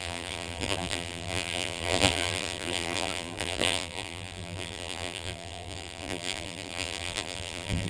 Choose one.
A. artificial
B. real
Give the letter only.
A